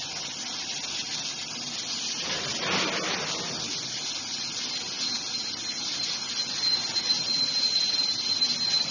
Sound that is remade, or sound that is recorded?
recorded